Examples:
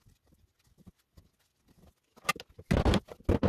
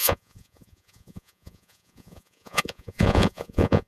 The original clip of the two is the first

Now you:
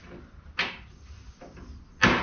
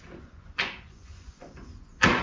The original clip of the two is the first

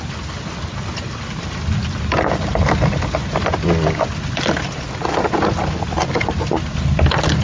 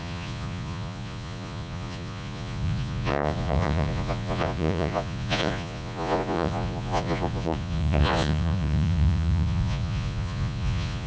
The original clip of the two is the first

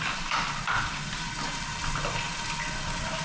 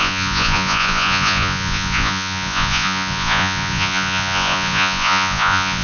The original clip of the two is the first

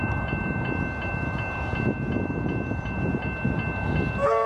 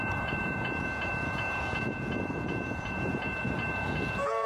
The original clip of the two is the first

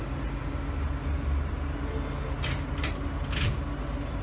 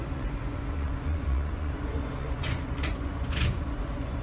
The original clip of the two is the first